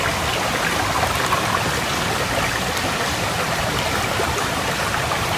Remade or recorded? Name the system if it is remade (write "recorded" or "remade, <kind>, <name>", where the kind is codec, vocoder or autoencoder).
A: recorded